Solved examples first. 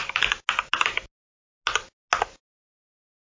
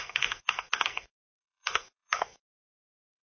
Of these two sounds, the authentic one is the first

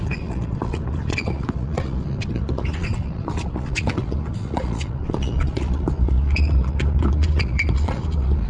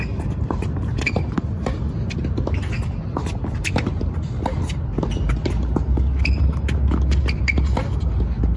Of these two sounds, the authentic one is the second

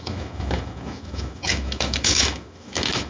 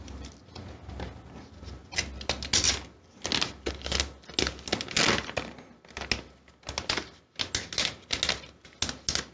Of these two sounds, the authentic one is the second